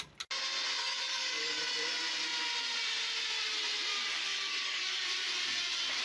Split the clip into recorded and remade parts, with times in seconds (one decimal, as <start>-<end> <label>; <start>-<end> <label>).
0.0-0.8 recorded; 0.8-1.6 remade; 1.6-4.1 recorded; 4.1-5.1 remade; 5.1-6.0 recorded